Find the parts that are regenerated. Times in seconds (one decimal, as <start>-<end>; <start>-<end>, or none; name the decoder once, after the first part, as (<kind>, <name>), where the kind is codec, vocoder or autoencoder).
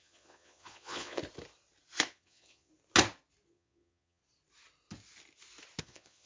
0.0-1.2 (vocoder, Vocos); 2.1-2.7; 3.5-4.2; 5.8-6.3